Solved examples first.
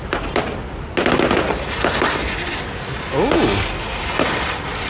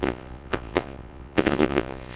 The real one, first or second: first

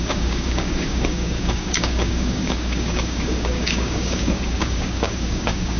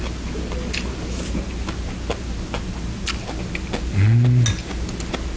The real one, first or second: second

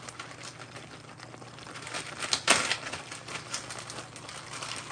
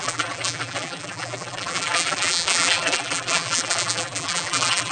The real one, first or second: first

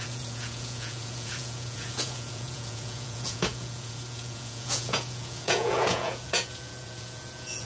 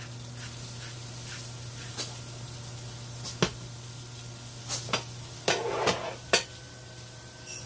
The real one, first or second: second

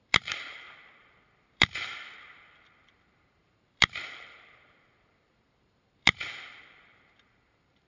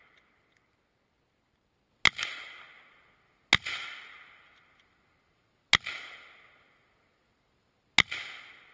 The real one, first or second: second